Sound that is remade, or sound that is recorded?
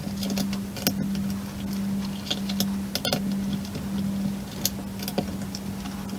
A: recorded